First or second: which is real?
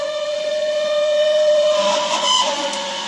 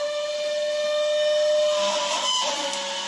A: second